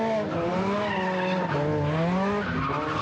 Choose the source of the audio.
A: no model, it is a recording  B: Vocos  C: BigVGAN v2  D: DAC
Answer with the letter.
A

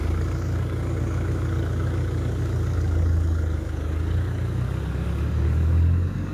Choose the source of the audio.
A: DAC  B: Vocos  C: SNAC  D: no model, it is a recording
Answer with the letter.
A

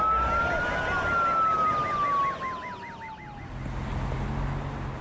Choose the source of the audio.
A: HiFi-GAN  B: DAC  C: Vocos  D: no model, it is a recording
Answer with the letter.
D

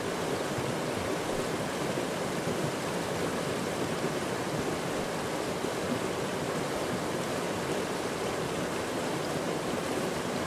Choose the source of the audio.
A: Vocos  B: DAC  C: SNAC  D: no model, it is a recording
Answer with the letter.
D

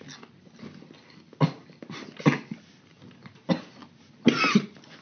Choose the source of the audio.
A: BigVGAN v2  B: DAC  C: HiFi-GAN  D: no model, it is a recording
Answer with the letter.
D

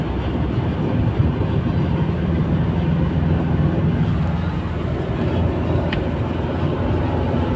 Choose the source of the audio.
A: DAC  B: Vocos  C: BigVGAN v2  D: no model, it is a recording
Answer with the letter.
D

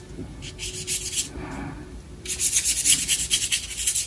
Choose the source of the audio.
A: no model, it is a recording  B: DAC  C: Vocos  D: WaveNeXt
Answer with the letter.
A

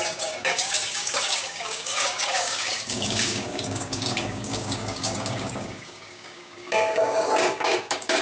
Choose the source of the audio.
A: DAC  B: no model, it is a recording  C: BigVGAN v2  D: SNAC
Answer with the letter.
A